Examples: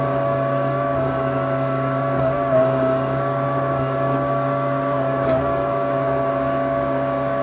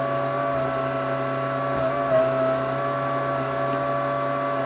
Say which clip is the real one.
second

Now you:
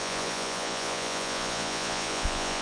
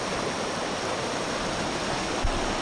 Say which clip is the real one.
second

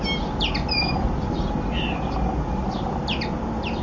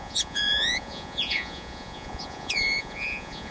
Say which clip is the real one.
first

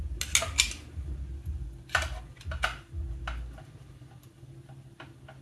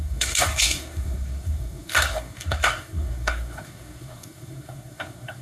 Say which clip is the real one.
first